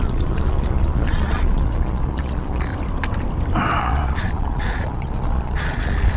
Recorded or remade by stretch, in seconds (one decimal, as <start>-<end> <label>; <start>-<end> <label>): 0.0-2.7 remade; 2.7-3.8 recorded; 3.8-6.2 remade